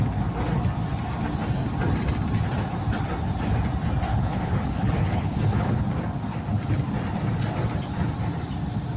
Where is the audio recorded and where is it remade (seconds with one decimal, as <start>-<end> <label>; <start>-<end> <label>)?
0.0-4.1 recorded; 4.1-5.8 remade; 5.8-9.0 recorded